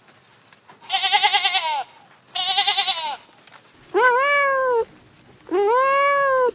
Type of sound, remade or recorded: recorded